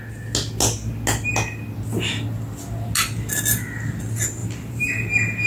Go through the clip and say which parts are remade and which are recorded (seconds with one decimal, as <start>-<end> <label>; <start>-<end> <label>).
0.0-4.4 recorded; 4.4-5.1 remade; 5.1-5.5 recorded